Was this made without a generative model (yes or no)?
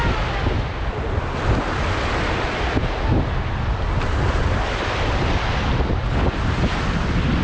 yes